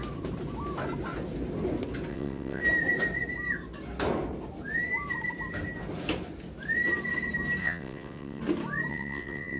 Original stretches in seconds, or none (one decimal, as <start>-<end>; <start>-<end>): 0.0-2.1; 2.6-7.6; 8.4-8.9